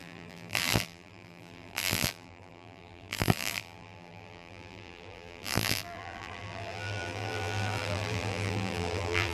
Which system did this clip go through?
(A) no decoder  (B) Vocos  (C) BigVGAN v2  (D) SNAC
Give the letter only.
C